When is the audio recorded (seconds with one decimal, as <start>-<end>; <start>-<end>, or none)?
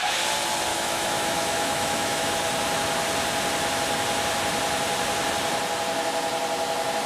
0.0-0.7; 2.3-7.1